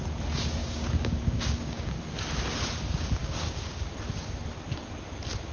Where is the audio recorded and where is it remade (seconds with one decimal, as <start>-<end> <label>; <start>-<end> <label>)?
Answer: 0.0-0.6 recorded; 0.6-2.0 remade; 2.0-3.2 recorded; 3.2-3.8 remade; 3.8-5.5 recorded